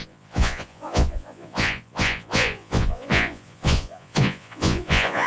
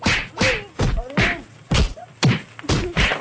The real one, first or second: second